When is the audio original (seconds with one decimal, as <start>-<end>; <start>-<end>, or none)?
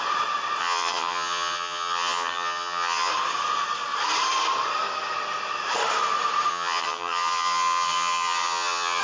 0.0-0.6; 3.1-6.5